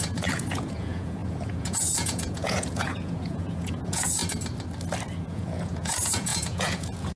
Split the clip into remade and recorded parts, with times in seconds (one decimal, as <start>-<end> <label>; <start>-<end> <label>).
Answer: 0.0-4.2 remade; 4.2-5.3 recorded; 5.3-7.2 remade